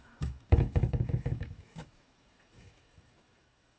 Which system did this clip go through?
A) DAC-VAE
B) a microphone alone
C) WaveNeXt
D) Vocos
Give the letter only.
A